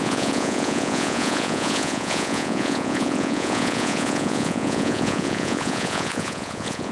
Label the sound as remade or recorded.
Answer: remade